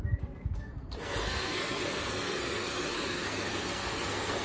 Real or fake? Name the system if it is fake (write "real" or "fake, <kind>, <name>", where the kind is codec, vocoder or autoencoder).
fake, codec, SNAC